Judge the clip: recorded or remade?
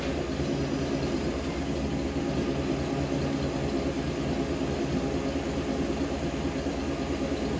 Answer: recorded